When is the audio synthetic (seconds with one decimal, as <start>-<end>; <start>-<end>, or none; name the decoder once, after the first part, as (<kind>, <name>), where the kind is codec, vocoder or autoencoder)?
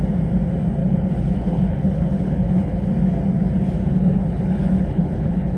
0.8-2.9 (codec, HILCodec); 3.9-5.6